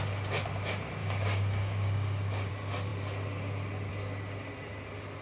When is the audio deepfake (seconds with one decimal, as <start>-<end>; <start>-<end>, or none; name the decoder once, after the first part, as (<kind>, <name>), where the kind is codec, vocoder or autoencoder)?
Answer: 1.0-2.5 (codec, DAC)